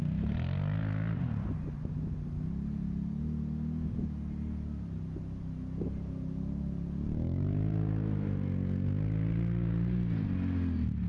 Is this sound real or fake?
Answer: real